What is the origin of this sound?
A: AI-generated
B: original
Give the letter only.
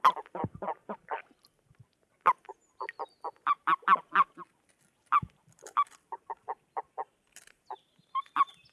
B